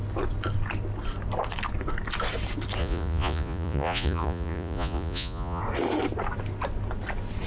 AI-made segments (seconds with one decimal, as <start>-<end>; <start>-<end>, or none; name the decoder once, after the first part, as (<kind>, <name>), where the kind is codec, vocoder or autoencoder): 2.8-5.6 (vocoder, Vocos)